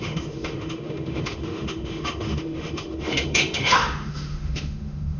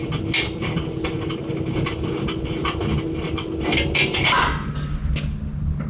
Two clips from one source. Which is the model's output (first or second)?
first